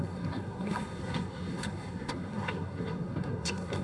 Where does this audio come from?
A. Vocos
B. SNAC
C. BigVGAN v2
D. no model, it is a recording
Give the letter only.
B